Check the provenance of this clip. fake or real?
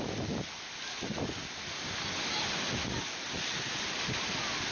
real